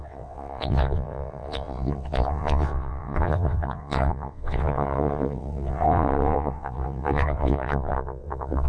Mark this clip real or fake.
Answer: fake